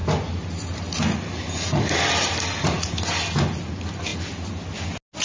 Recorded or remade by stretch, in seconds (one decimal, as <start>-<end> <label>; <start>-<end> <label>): 0.0-5.2 recorded